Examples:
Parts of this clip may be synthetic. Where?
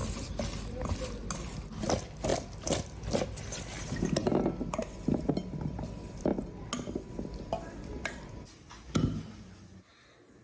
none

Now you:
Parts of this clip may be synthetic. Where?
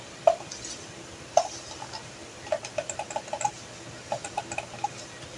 none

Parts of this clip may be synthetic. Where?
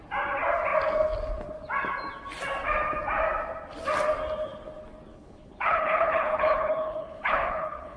5.1-8.0 (codec, HILCodec)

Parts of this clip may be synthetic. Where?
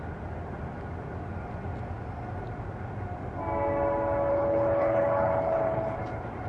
4.3-6.0 (codec, HILCodec)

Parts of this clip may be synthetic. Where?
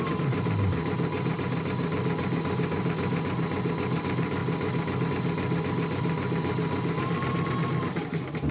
none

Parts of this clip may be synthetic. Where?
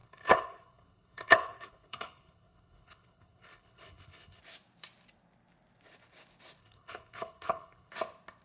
0.0-4.4 (codec, HILCodec); 6.6-7.9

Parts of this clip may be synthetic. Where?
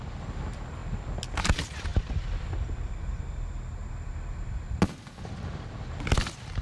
none